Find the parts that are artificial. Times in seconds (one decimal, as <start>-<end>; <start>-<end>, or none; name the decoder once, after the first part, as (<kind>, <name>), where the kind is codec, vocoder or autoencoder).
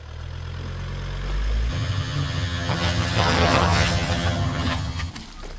1.7-5.1 (vocoder, HiFi-GAN)